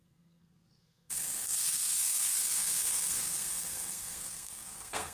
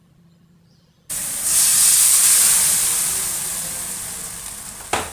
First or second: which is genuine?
second